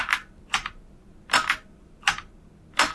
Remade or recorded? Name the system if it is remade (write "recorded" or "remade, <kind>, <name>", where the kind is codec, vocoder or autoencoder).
recorded